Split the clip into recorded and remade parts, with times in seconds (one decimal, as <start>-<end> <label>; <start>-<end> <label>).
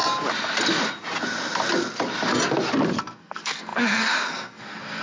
0.0-3.0 recorded; 3.0-5.0 remade